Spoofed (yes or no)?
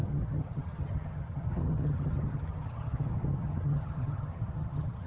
yes